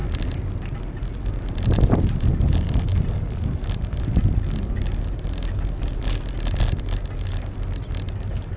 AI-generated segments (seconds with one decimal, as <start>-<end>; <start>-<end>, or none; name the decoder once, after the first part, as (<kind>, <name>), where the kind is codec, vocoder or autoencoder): none